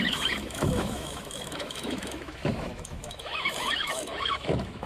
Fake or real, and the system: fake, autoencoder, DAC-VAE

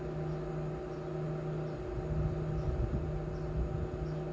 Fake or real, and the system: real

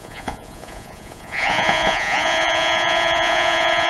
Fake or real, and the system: fake, vocoder, Vocos